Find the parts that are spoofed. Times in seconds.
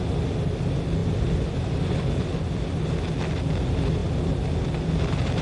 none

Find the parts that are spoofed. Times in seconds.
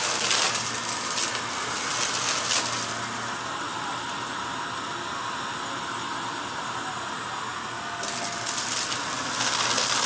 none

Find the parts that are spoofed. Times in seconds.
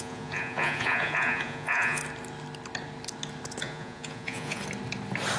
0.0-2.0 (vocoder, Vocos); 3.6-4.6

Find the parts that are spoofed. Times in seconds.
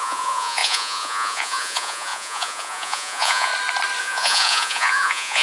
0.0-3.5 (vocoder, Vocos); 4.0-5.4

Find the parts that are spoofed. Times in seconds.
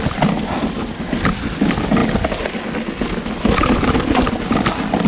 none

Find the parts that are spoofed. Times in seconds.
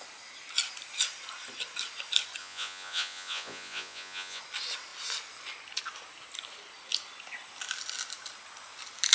2.4-4.4 (vocoder, Vocos)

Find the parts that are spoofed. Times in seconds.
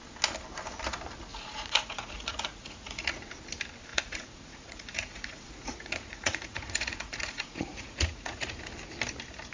1.3-3.3 (vocoder, Vocos); 3.9-8.6